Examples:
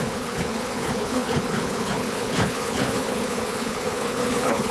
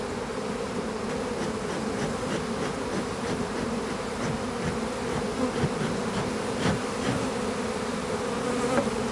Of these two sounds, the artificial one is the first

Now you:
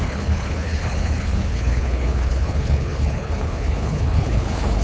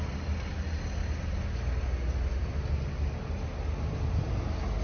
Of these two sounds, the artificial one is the first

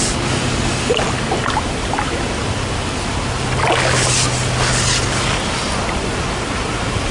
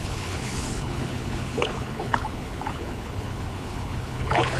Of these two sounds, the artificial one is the second